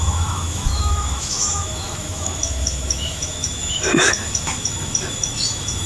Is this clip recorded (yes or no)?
no